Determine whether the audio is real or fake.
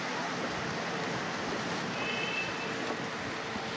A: real